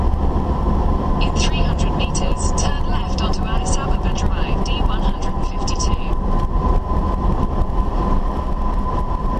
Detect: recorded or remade remade